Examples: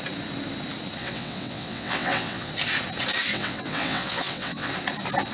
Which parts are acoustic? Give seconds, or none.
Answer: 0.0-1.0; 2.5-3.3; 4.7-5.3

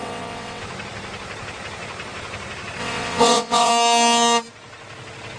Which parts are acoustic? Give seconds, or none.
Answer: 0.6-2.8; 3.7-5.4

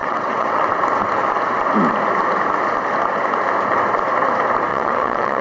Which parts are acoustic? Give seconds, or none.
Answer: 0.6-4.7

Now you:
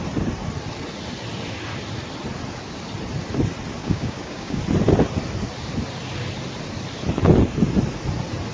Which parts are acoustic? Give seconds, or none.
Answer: 0.0-3.8; 4.6-8.5

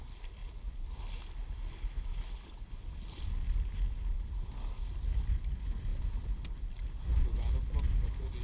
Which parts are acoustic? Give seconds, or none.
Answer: 0.0-8.4

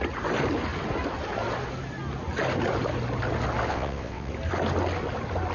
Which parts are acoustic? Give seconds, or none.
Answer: 0.0-3.7; 4.3-5.5

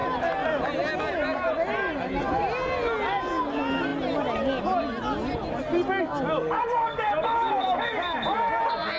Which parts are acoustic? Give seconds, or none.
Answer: 0.0-9.0

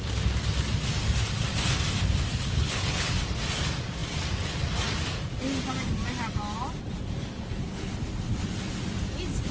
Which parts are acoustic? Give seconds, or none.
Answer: 0.0-2.3; 3.1-7.2; 8.0-9.5